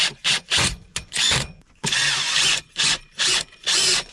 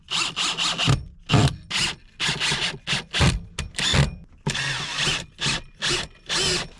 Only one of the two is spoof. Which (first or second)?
first